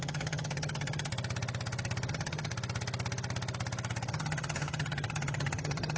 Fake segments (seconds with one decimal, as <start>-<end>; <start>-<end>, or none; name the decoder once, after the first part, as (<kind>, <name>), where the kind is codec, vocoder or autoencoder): 0.0-1.1 (vocoder, HiFi-GAN); 2.1-2.5; 4.1-6.0